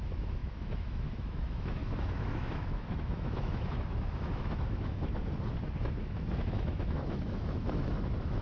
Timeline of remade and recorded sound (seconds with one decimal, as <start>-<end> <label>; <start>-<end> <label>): 0.0-5.2 remade; 5.2-5.8 recorded; 5.8-8.4 remade